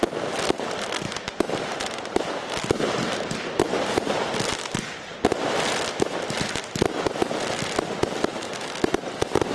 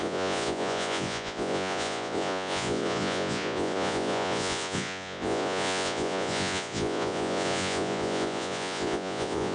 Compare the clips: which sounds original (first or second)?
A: first